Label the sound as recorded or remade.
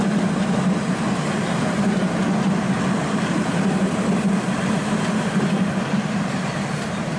recorded